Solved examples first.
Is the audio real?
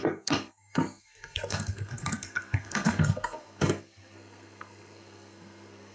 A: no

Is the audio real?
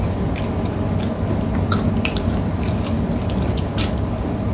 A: yes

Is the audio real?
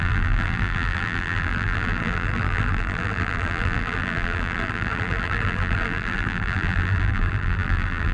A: no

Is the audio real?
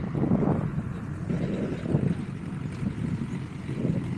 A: yes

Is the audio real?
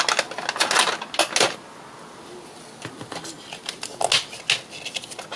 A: yes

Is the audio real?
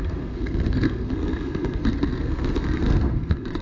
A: no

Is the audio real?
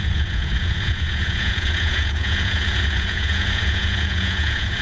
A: no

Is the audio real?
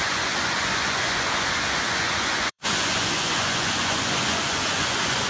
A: no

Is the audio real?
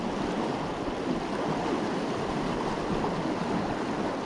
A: yes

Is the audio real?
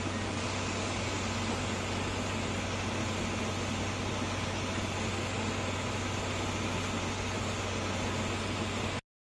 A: yes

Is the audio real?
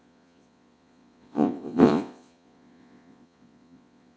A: no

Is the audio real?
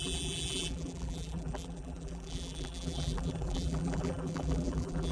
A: no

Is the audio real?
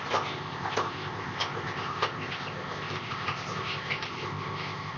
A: no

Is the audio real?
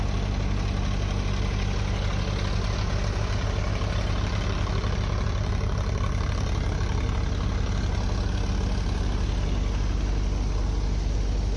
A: yes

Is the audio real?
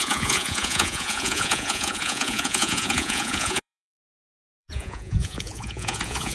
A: no